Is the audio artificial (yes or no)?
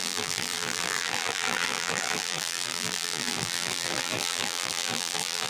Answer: yes